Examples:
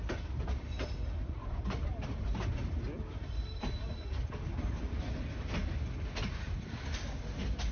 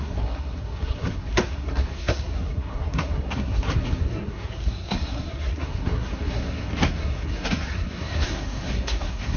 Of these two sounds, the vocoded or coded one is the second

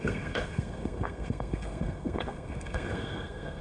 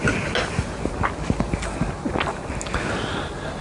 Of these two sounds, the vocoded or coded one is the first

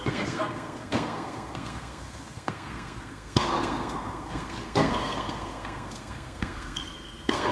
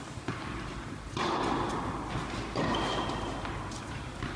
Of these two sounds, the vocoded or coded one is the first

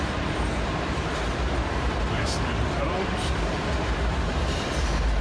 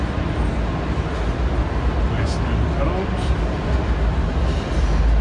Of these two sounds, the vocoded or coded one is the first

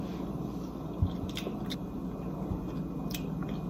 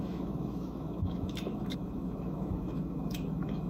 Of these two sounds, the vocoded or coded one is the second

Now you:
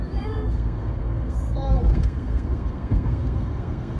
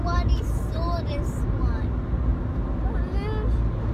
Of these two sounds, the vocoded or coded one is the first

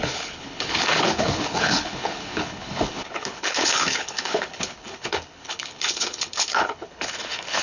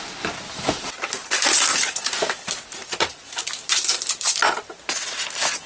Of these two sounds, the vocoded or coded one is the first